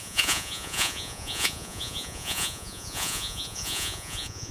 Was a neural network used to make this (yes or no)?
yes